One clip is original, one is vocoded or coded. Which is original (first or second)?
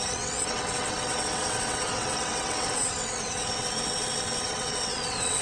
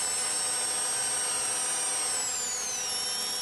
second